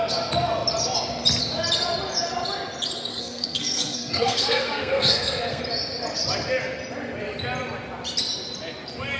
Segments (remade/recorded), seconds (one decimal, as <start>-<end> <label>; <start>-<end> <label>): 0.0-3.1 recorded; 3.1-5.6 remade; 5.6-9.2 recorded